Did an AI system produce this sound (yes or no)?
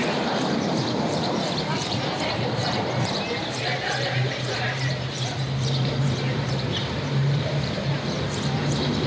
yes